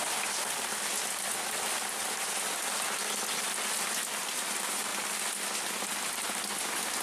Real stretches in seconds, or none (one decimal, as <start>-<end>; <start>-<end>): 0.0-7.0

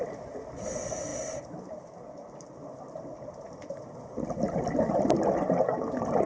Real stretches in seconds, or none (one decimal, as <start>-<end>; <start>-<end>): 0.0-6.3

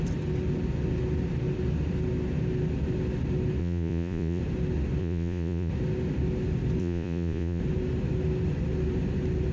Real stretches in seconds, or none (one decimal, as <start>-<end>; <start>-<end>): 0.0-3.6; 4.4-5.0; 5.7-6.8; 7.6-9.5

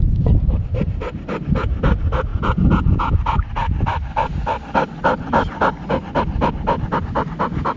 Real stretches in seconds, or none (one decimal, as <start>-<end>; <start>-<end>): 0.0-2.3; 3.1-7.8

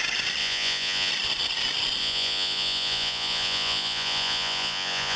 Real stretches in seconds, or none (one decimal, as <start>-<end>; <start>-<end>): 0.0-0.4; 1.1-2.0